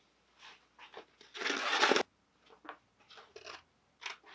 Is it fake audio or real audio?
real